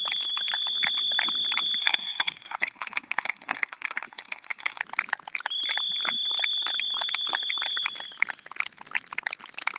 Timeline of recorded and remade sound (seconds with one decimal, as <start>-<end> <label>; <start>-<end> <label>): 0.0-1.8 recorded; 1.8-4.8 remade; 4.8-9.8 recorded